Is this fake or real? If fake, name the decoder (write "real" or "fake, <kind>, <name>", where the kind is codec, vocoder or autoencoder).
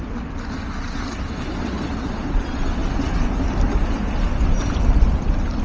real